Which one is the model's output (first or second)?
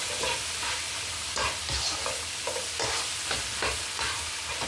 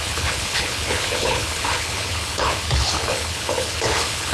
second